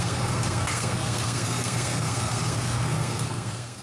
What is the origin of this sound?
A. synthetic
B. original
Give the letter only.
A